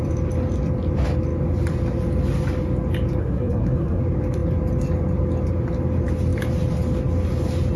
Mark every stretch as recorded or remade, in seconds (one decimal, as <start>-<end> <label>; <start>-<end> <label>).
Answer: 0.0-3.2 recorded; 3.2-4.0 remade; 4.0-7.8 recorded